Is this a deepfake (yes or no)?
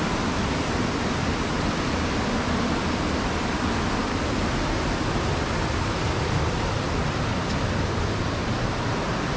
no